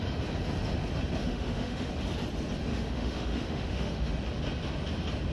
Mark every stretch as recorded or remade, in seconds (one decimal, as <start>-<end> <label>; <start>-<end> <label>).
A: 0.0-1.2 recorded; 1.2-1.9 remade; 1.9-2.7 recorded; 2.7-4.1 remade; 4.1-5.3 recorded